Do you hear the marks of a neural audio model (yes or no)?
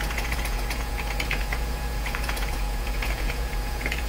yes